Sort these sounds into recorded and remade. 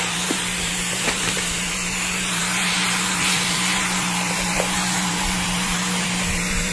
remade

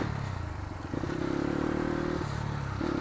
recorded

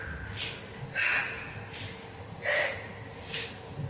recorded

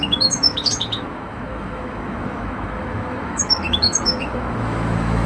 remade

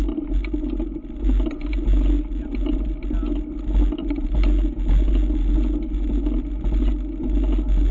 recorded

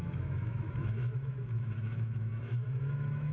remade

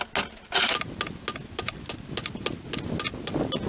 recorded